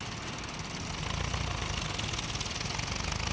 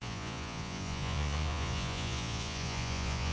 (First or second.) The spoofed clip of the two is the second